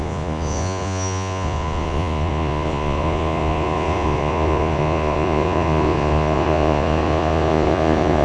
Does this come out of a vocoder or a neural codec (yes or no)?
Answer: yes